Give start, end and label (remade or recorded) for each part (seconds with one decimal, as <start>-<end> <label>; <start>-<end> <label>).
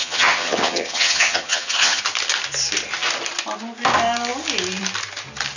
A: 0.0-2.0 remade; 2.0-5.6 recorded